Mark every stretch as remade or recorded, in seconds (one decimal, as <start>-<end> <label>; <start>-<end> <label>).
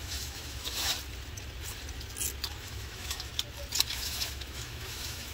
0.0-0.9 remade; 0.9-2.5 recorded; 2.5-3.3 remade; 3.3-3.9 recorded; 3.9-5.3 remade